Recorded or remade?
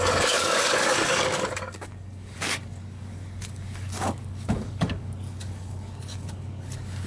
remade